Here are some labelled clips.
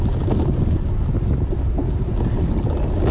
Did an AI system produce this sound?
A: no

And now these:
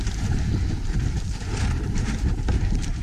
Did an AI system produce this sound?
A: yes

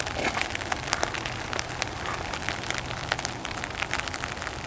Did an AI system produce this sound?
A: no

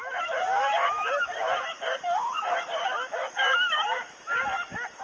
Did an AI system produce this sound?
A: yes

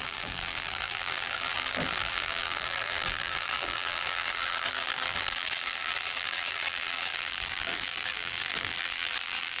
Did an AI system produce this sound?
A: yes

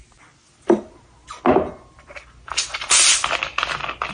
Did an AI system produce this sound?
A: no